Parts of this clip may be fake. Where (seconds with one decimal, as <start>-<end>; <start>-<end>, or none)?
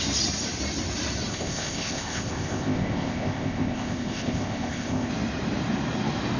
1.3-5.1